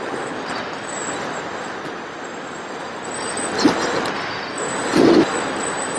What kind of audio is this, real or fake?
real